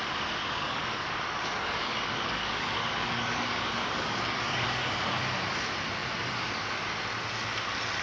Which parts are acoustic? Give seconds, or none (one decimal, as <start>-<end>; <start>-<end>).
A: 0.0-0.4; 5.2-8.0